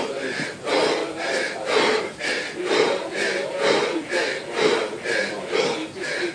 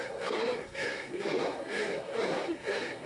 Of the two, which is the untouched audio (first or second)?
first